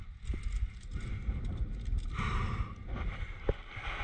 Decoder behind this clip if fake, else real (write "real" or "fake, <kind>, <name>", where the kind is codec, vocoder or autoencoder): real